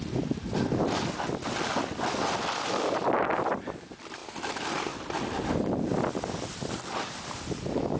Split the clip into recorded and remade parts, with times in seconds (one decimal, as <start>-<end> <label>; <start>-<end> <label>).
0.0-8.0 recorded

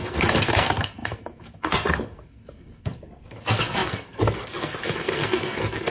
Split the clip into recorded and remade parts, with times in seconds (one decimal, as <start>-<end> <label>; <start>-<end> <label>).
0.0-5.9 remade

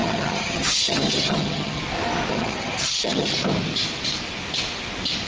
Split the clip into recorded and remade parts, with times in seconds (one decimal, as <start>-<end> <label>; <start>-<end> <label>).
0.0-1.8 remade; 1.8-2.3 recorded; 2.3-3.3 remade; 3.3-5.3 recorded

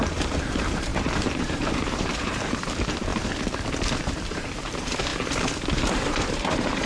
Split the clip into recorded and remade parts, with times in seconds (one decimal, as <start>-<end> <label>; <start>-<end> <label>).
0.0-3.1 remade; 3.1-4.0 recorded; 4.0-5.1 remade; 5.1-5.9 recorded; 5.9-6.9 remade

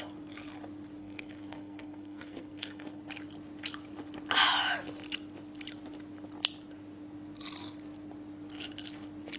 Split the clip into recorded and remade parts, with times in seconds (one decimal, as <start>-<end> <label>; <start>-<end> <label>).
0.0-1.0 recorded; 1.0-3.0 remade; 3.0-9.4 recorded

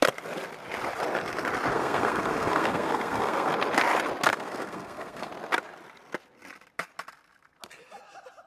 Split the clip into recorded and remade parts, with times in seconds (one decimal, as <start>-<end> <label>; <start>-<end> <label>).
0.0-1.7 recorded; 1.7-3.5 remade; 3.5-4.3 recorded; 4.3-5.3 remade; 5.3-8.5 recorded